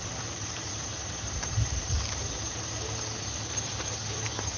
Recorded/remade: remade